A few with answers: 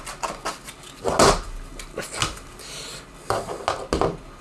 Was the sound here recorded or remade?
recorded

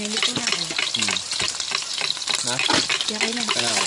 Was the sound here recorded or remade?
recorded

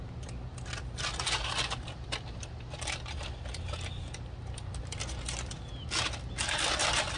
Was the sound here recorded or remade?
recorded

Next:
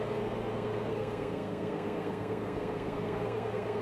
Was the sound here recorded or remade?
remade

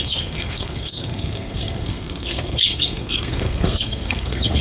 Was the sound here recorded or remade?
remade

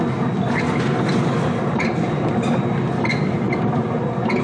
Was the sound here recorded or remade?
recorded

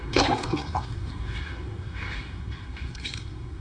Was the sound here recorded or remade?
remade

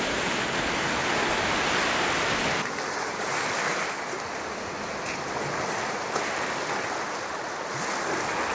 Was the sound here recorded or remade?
recorded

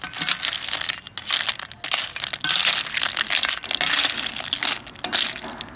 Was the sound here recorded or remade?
recorded